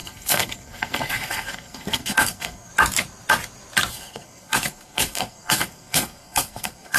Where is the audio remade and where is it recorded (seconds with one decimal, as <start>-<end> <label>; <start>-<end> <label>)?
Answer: 0.0-2.7 remade; 2.7-3.9 recorded; 3.9-7.0 remade